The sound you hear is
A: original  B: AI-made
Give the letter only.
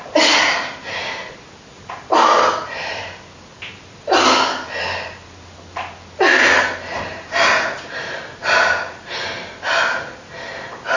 A